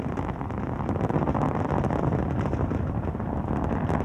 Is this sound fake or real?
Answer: fake